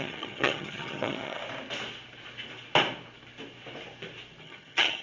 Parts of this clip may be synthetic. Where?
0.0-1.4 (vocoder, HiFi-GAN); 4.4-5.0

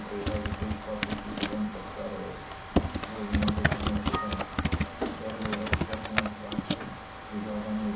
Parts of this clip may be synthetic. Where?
none